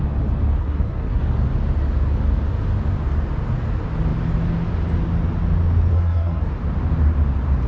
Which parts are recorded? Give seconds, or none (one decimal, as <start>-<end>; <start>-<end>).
0.0-0.6; 1.2-5.9; 6.5-7.7

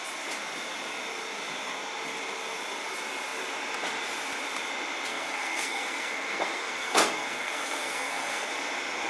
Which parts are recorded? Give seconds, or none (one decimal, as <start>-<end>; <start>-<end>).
0.0-5.1; 8.5-9.1

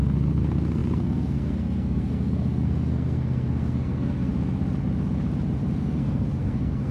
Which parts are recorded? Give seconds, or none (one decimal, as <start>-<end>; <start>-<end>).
4.3-5.8

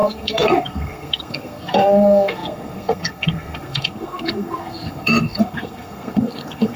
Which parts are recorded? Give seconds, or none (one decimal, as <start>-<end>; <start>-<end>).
none

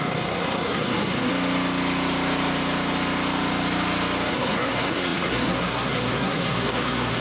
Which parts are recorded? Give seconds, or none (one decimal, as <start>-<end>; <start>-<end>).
1.3-4.3

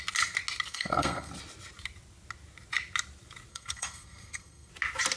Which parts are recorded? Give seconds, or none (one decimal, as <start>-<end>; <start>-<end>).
0.0-0.7; 1.3-3.5; 4.7-5.2

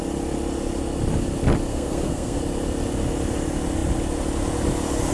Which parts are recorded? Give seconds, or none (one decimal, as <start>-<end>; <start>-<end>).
0.0-1.7; 2.4-5.1